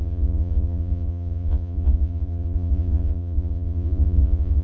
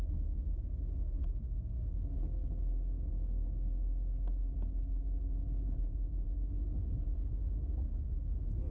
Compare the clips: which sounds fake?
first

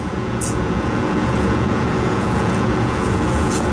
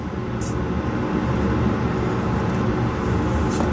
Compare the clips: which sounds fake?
first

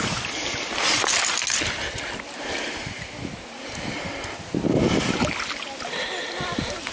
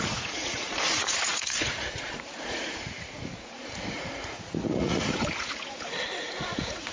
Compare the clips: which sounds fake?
second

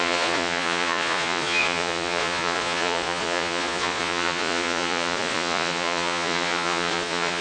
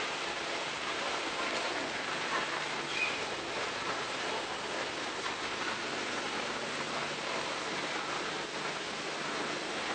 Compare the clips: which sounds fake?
first